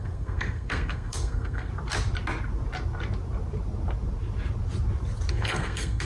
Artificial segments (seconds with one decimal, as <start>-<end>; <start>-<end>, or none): 0.0-1.7; 5.3-6.0

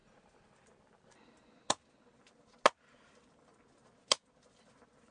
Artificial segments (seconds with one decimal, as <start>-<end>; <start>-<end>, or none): none